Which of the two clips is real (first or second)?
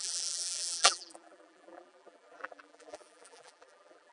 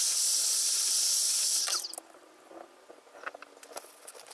second